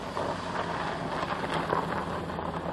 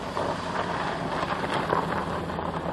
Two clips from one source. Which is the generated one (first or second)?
second